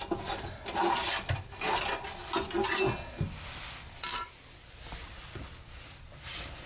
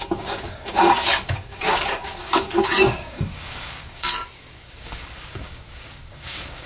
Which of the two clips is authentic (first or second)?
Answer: first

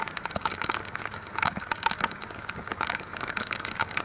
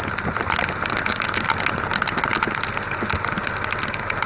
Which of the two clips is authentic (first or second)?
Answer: second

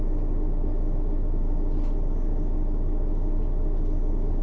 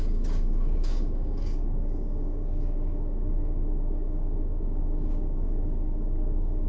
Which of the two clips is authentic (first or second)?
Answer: first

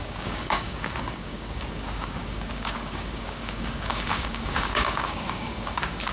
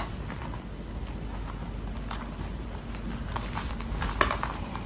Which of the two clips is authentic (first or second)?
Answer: second